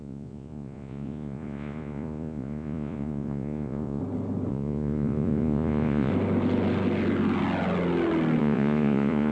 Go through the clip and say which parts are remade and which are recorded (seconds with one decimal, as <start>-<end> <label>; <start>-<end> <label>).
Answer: 0.0-4.0 remade; 4.0-4.5 recorded; 4.5-6.1 remade; 6.1-8.4 recorded; 8.4-9.3 remade